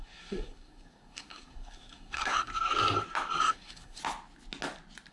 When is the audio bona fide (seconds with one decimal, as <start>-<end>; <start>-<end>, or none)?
2.5-3.4; 4.0-5.1